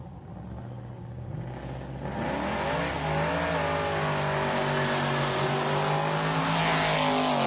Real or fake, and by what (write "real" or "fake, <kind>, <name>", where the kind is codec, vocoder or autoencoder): real